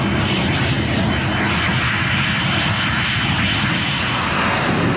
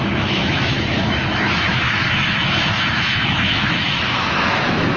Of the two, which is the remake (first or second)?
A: second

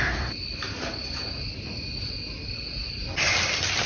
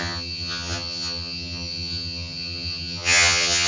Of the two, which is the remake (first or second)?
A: second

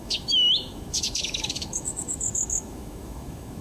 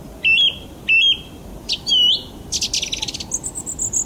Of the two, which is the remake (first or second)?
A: first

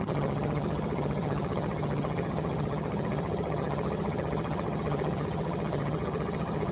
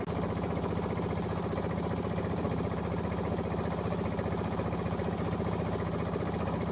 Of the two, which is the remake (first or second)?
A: first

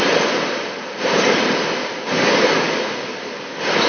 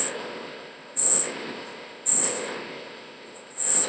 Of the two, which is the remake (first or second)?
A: second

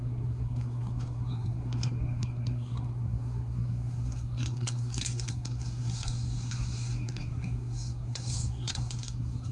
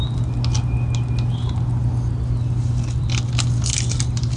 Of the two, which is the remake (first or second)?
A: first